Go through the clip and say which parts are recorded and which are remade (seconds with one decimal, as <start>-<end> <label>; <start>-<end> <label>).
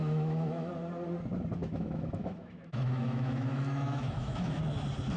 0.0-0.7 remade; 0.7-1.6 recorded; 1.6-4.6 remade; 4.6-5.2 recorded